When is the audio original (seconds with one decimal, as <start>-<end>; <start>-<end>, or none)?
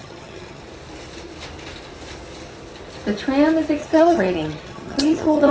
0.6-3.8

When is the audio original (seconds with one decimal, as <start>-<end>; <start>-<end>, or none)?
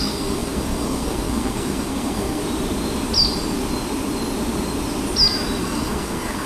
2.4-5.6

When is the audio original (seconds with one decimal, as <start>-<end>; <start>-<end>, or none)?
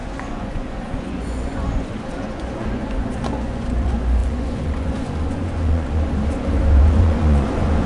none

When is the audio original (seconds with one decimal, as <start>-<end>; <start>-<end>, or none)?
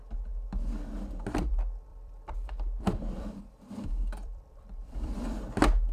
0.0-1.9; 5.4-5.9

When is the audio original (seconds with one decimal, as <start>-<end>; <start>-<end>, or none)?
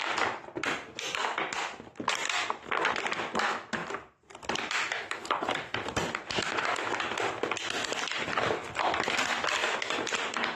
0.0-3.8; 6.3-10.6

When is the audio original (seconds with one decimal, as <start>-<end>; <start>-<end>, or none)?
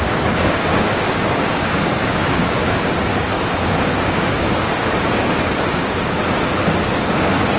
none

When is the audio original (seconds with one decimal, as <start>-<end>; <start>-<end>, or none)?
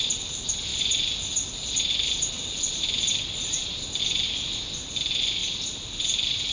0.0-6.5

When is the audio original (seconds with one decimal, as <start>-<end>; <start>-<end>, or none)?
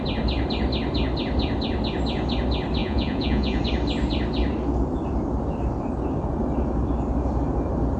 0.0-2.8; 3.6-8.0